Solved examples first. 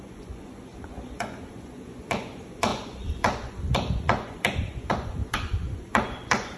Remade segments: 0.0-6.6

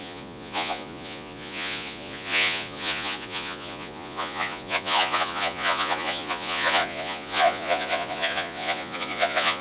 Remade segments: 0.0-9.6

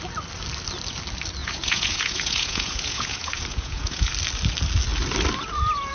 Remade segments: 1.4-4.1

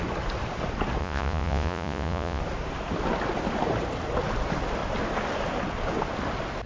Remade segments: 1.0-2.4

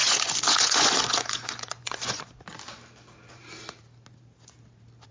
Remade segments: 0.0-2.3